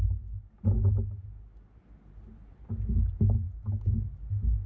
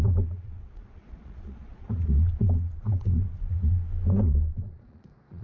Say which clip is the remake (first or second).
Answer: second